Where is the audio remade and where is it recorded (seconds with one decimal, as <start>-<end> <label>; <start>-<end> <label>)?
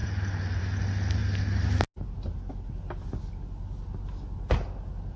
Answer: 0.0-5.2 recorded